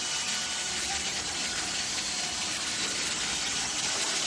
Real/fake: fake